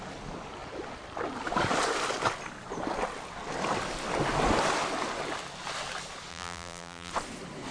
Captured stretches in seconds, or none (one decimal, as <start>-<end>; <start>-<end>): 0.0-6.3; 7.1-7.7